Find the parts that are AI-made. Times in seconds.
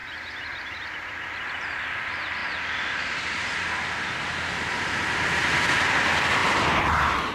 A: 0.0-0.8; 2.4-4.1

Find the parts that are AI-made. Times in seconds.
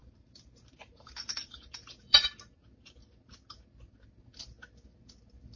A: 0.0-2.5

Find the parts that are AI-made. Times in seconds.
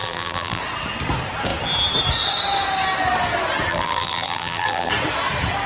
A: 0.0-0.6; 3.7-4.9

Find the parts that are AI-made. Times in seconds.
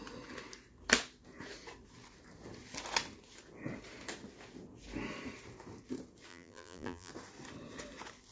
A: 6.3-7.1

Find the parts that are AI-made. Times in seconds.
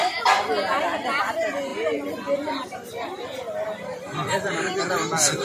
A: 0.8-5.4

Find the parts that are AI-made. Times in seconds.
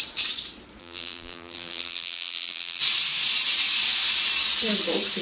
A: 0.8-2.8